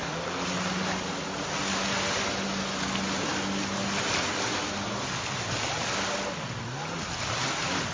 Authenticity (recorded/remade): recorded